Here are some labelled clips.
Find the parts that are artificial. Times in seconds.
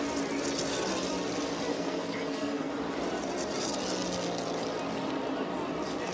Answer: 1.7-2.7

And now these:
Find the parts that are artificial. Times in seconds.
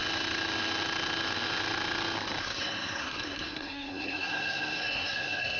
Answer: 2.4-5.6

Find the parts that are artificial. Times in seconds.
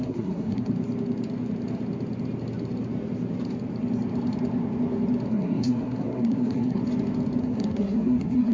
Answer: 0.0-0.7; 5.3-6.8; 7.4-8.5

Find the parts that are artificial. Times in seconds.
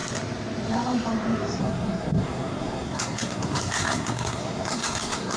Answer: 1.6-5.4